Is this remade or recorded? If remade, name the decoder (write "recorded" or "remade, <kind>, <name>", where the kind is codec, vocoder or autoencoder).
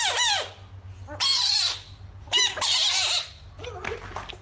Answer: recorded